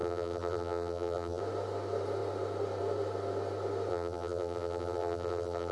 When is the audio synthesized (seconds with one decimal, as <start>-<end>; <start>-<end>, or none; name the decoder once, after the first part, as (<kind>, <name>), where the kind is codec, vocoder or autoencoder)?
0.0-1.4 (vocoder, BigVGAN v2); 3.9-5.7